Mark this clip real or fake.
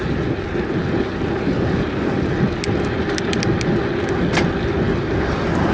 real